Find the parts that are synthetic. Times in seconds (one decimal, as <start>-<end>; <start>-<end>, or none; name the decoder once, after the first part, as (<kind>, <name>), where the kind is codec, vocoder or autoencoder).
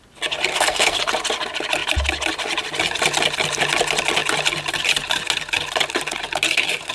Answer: 0.5-1.0 (codec, SNAC)